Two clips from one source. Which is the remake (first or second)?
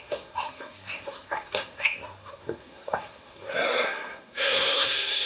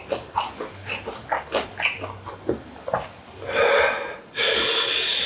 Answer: first